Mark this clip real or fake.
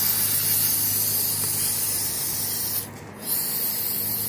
real